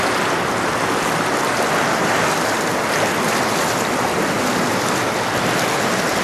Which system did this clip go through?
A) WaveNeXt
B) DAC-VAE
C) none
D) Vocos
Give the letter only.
C